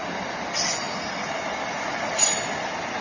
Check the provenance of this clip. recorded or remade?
recorded